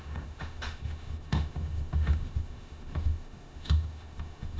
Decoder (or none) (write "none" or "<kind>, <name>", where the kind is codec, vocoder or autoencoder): autoencoder, DAC-VAE